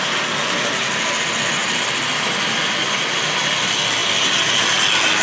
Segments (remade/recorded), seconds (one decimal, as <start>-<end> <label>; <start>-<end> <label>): 0.0-1.6 recorded; 1.6-3.2 remade; 3.2-4.0 recorded; 4.0-4.6 remade; 4.6-5.2 recorded